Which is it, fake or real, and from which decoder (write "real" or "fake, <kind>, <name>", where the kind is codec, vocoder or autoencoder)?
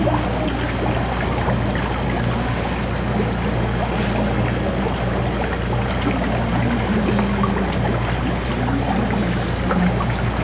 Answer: real